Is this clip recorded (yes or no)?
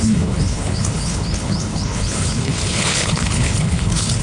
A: no